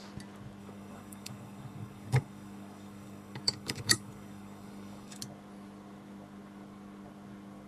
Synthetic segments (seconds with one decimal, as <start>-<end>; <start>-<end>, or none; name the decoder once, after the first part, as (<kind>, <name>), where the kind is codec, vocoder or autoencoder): 0.6-5.2 (codec, DAC)